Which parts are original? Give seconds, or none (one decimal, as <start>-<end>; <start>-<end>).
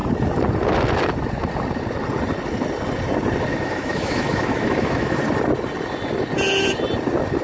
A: 0.0-3.5; 5.2-7.4